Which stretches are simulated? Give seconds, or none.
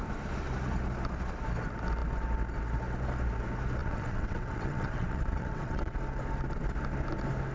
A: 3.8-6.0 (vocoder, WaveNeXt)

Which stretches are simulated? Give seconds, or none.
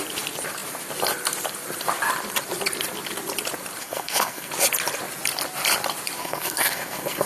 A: 3.8-4.5 (codec, SNAC); 6.2-7.3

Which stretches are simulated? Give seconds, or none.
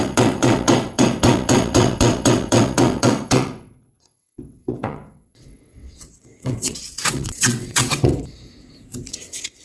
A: 0.0-8.1 (vocoder, WaveNeXt); 9.1-9.6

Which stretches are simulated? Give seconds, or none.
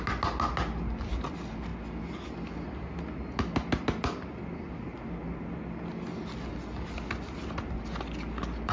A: none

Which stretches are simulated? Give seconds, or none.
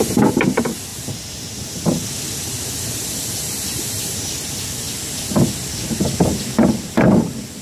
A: none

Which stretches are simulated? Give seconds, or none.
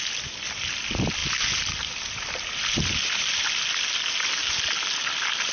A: none